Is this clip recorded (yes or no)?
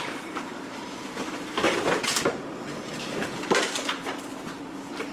no